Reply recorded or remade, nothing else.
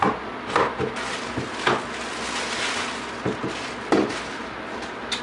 recorded